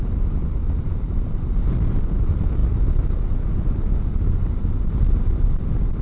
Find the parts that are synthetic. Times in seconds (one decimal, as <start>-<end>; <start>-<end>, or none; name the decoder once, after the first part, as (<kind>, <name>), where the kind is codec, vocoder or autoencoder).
none